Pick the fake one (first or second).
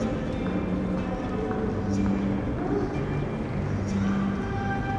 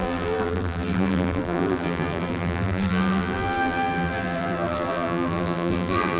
second